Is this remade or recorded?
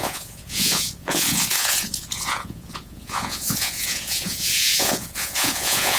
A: remade